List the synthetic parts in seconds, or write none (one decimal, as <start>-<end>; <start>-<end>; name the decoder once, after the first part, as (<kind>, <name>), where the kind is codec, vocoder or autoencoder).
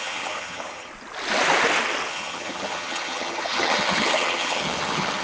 0.0-0.9 (vocoder, HiFi-GAN); 2.1-5.2